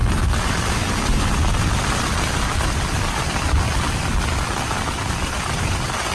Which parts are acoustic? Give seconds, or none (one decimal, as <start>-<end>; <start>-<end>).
1.3-2.1